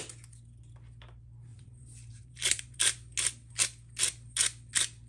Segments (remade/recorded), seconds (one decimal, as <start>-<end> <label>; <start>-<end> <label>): 0.0-1.5 recorded; 1.5-2.8 remade; 2.8-5.1 recorded